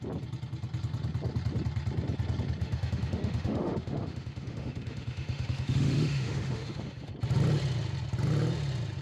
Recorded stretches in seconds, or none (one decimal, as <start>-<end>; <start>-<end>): 0.0-2.6; 7.1-9.0